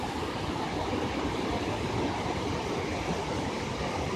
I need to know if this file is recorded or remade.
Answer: recorded